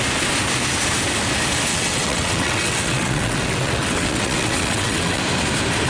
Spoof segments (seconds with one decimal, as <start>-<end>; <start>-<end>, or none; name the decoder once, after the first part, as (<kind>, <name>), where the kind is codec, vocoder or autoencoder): 1.7-5.2 (vocoder, WaveNeXt)